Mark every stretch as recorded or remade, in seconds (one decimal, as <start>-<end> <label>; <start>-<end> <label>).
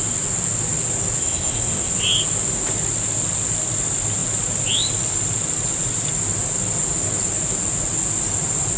0.0-1.2 recorded; 1.2-1.9 remade; 1.9-8.8 recorded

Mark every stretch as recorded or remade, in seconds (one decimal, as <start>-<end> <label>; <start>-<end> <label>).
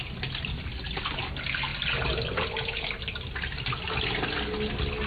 0.0-5.1 recorded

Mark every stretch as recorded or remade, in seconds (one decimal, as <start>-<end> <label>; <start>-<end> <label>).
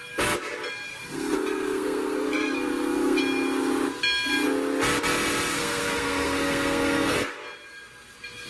0.0-0.9 recorded; 0.9-3.2 remade; 3.2-5.5 recorded; 5.5-7.3 remade; 7.3-8.5 recorded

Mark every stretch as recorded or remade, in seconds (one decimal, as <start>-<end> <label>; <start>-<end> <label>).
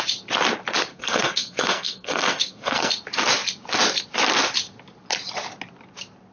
0.0-0.9 recorded; 0.9-2.9 remade; 2.9-6.3 recorded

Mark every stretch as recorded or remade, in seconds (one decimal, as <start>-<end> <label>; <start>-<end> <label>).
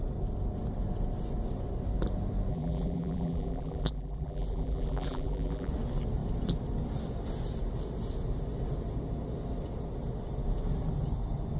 0.0-2.5 recorded; 2.5-5.7 remade; 5.7-11.6 recorded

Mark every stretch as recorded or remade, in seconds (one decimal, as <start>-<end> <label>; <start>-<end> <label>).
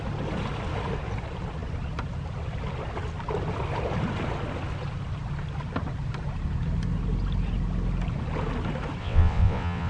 0.0-9.0 recorded; 9.0-9.9 remade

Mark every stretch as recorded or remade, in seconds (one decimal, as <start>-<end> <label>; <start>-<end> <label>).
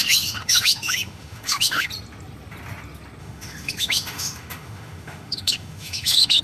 0.0-1.9 remade; 1.9-3.2 recorded; 3.2-6.4 remade